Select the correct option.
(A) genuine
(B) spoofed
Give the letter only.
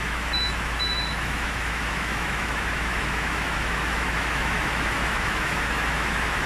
B